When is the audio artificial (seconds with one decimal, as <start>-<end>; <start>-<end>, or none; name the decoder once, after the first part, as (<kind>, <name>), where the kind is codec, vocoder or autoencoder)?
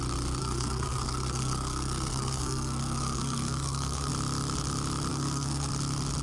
0.4-4.1 (codec, SNAC); 5.1-5.7